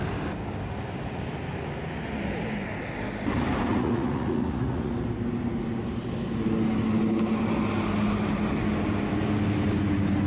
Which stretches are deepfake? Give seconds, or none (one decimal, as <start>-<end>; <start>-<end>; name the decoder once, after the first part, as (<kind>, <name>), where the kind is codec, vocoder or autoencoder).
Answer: 3.7-4.9 (vocoder, Vocos)